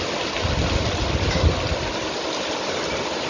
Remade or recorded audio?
recorded